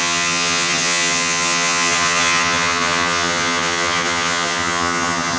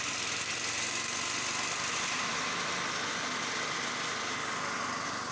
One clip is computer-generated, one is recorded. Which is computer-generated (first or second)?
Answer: first